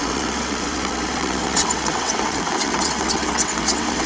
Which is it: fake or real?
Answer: fake